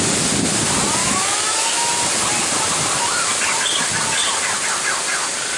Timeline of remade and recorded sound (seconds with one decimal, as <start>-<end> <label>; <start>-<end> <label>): 0.0-1.0 recorded; 1.0-1.9 remade; 1.9-5.6 recorded

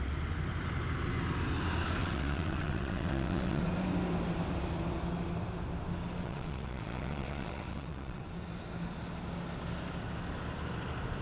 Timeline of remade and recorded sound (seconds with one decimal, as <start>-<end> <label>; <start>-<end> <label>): 0.0-2.0 recorded; 2.0-3.6 remade; 3.6-6.2 recorded; 6.2-8.2 remade; 8.2-11.2 recorded

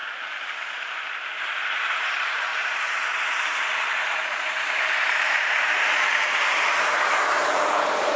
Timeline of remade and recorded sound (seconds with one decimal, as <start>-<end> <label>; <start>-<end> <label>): 0.0-1.4 recorded; 1.4-8.2 remade

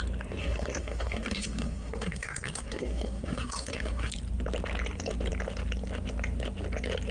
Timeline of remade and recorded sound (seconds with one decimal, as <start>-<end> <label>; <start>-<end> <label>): 0.0-0.4 recorded; 0.4-4.1 remade; 4.1-7.1 recorded

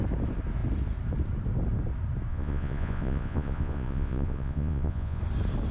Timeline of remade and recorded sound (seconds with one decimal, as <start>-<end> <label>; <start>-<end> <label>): 0.0-2.3 recorded; 2.3-5.2 remade; 5.2-5.7 recorded

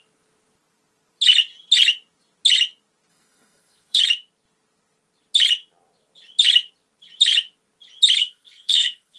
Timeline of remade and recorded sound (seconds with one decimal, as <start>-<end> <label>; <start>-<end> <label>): 0.0-3.1 recorded; 3.1-4.0 remade; 4.0-8.2 recorded; 8.2-9.2 remade

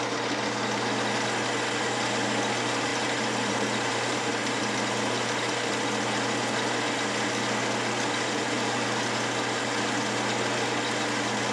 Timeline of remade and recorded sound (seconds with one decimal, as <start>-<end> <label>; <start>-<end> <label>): 0.0-2.9 recorded; 2.9-4.6 remade; 4.6-11.5 recorded

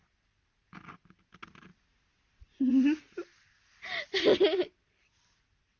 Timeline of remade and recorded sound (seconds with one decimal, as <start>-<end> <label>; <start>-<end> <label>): 0.0-5.8 recorded